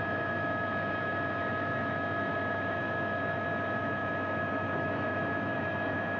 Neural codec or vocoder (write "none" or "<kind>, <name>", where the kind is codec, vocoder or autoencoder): autoencoder, DAC-VAE